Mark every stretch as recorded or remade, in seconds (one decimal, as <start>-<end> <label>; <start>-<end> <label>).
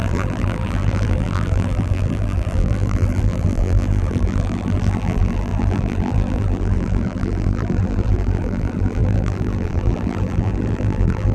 0.0-11.3 remade